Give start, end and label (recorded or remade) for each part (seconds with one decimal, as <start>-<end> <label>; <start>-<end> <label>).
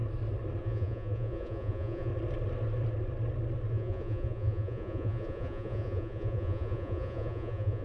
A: 0.0-0.6 recorded; 0.6-2.1 remade; 2.1-3.7 recorded; 3.7-7.8 remade